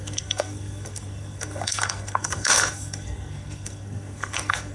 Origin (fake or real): fake